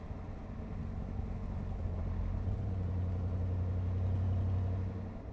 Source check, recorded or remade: recorded